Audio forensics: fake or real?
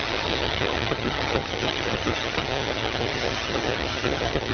fake